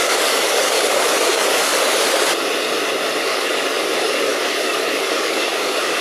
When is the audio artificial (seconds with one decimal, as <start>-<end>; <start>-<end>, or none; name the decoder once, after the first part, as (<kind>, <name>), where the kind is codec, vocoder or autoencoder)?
0.0-1.7 (codec, DAC); 3.2-6.0